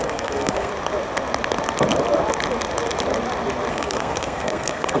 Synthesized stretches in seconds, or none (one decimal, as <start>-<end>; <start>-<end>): 0.0-0.7; 3.7-5.0

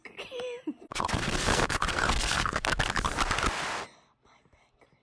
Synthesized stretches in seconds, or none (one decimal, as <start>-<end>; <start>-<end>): 0.9-2.8